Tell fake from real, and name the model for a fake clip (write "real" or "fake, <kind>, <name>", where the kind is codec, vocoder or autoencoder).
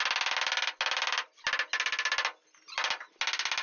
real